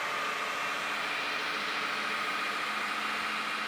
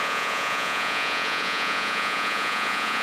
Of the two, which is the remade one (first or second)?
second